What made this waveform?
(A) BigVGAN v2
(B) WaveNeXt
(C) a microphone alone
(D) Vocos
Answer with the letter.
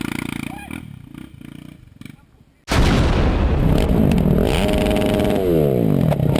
C